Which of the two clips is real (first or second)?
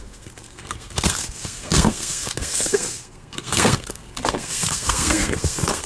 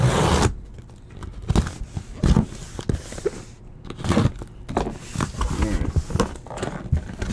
second